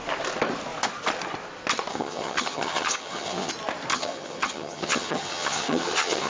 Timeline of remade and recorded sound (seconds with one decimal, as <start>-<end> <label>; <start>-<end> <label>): 0.0-1.9 recorded; 1.9-3.5 remade; 3.5-3.9 recorded; 3.9-6.3 remade